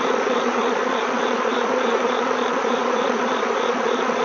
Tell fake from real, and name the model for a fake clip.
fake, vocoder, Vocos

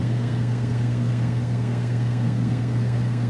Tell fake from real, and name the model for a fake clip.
fake, codec, SNAC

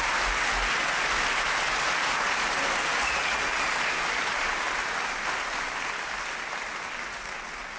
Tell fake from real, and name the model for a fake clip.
real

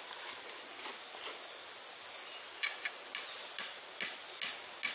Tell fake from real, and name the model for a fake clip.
real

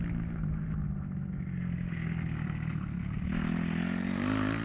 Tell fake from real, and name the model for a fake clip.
real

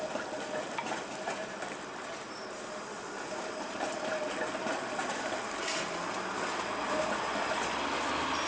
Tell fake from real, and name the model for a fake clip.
real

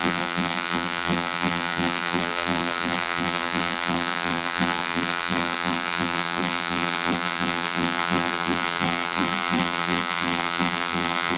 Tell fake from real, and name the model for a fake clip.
fake, vocoder, BigVGAN v2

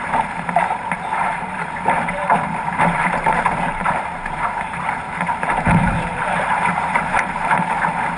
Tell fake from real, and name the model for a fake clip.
fake, vocoder, BigVGAN v2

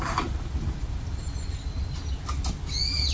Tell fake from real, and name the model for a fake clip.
real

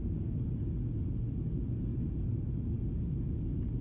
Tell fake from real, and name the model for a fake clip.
real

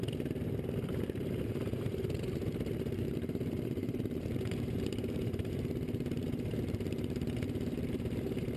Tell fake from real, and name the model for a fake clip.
fake, vocoder, BigVGAN v2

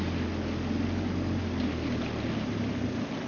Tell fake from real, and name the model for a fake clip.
real